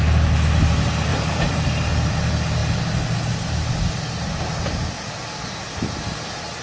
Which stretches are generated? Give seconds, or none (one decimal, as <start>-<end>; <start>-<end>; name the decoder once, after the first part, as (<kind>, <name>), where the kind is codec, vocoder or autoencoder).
1.1-1.7 (vocoder, BigVGAN v2)

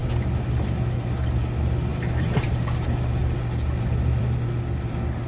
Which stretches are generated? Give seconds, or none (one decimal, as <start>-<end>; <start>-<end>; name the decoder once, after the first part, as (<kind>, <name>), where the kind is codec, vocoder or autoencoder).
1.9-2.5 (vocoder, BigVGAN v2)